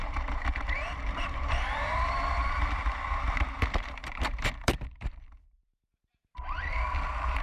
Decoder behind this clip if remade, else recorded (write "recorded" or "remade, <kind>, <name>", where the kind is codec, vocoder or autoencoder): remade, vocoder, BigVGAN v2